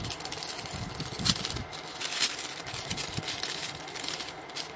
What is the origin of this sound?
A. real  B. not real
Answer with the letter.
A